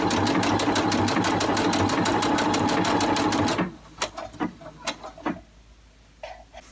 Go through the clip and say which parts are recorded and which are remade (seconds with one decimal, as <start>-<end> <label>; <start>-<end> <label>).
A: 0.0-6.7 recorded